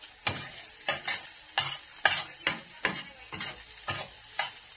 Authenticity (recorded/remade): recorded